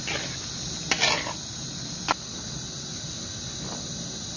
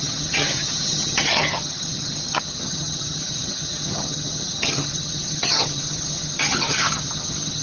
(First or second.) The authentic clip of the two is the first